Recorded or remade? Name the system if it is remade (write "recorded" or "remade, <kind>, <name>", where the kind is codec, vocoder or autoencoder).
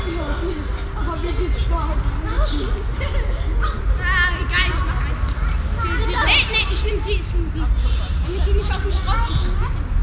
recorded